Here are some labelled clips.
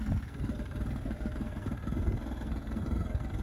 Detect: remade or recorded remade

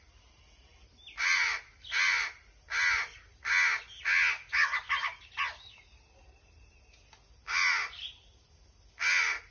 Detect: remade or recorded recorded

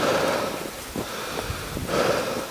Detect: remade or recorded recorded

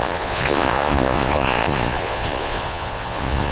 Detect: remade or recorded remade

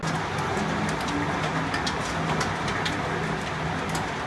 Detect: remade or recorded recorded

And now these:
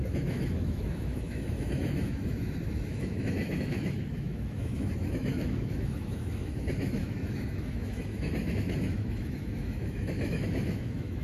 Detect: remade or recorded remade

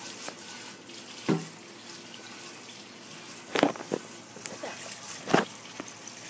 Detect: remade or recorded recorded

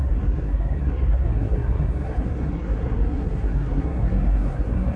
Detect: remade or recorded remade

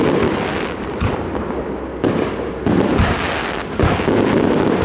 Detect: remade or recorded recorded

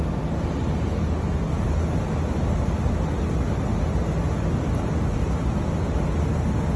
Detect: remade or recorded recorded